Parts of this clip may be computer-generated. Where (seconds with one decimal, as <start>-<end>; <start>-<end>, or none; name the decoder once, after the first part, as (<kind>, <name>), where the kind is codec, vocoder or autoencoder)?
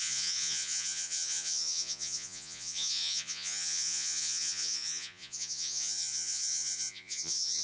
0.0-7.6 (vocoder, Vocos)